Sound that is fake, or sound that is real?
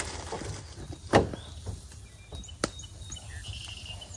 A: real